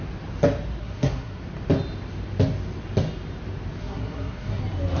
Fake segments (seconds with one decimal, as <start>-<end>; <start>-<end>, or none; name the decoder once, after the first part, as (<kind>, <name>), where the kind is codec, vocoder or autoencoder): 0.8-1.4 (codec, SNAC); 3.8-4.6

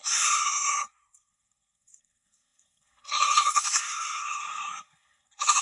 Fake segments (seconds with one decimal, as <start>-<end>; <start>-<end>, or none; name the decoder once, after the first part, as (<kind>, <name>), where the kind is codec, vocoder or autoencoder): 0.0-5.6 (codec, SNAC)

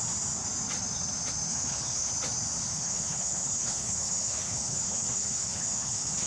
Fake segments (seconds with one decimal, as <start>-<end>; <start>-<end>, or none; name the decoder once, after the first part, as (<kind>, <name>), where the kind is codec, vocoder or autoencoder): 1.5-2.1 (codec, HILCodec); 2.7-6.3

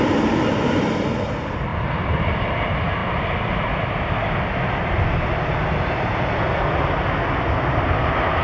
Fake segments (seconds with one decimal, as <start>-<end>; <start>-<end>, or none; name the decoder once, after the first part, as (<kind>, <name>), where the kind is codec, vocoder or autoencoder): none

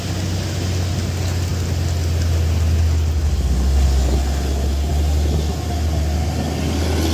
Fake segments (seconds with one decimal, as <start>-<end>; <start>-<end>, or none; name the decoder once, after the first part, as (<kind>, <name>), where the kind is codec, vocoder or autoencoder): none